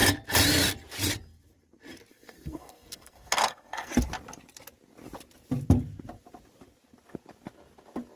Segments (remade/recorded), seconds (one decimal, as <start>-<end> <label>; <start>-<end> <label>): 0.0-2.1 recorded; 2.1-3.9 remade; 3.9-8.2 recorded